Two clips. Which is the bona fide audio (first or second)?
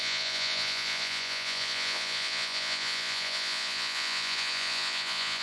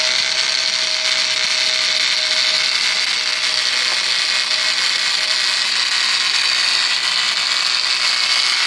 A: second